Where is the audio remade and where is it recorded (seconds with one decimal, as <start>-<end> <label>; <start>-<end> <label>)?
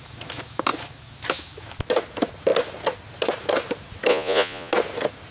0.0-4.1 recorded; 4.1-4.7 remade; 4.7-5.3 recorded